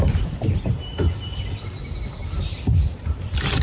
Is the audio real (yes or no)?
yes